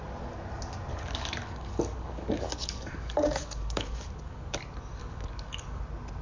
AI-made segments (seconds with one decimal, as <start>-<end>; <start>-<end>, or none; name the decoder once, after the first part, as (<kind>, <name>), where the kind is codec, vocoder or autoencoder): 0.9-4.6 (codec, DAC); 5.0-5.8